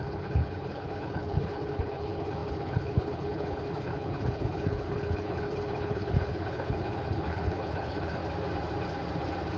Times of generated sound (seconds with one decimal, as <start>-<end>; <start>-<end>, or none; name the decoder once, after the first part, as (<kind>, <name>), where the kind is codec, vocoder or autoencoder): 0.0-8.2 (codec, HILCodec)